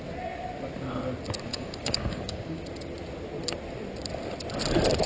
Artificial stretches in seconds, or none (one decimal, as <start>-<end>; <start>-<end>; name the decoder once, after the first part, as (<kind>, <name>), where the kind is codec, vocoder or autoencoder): 1.5-2.6 (codec, DAC)